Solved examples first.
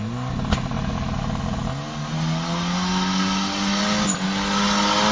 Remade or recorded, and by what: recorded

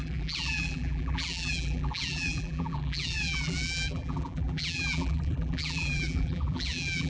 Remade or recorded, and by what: remade, vocoder, BigVGAN v2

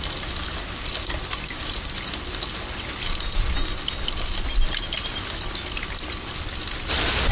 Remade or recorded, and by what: recorded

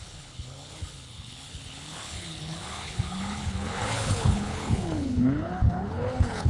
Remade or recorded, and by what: remade, codec, HILCodec